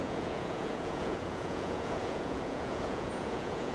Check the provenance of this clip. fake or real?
fake